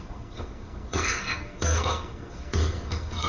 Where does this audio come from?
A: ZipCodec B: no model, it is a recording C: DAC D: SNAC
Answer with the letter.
D